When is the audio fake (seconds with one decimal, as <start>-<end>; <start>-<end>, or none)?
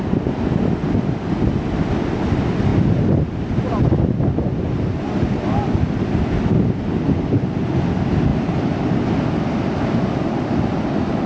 none